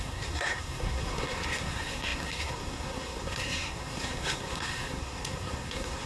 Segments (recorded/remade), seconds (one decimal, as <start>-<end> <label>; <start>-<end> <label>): 0.0-6.1 remade